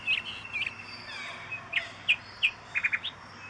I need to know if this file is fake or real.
real